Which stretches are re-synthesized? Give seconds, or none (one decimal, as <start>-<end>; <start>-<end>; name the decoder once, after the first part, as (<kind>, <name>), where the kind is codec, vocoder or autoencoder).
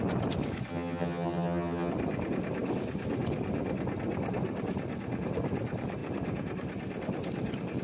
0.7-1.9 (vocoder, HiFi-GAN)